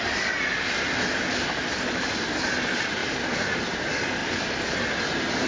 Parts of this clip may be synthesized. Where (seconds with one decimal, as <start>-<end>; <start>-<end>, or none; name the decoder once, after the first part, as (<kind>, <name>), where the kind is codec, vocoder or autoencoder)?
3.0-3.6 (vocoder, BigVGAN v2); 4.2-4.7